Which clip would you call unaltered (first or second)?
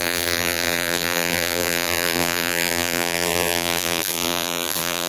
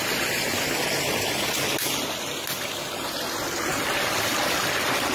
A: second